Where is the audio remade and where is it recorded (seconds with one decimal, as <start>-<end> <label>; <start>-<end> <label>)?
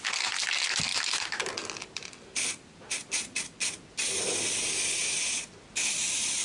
0.0-6.4 recorded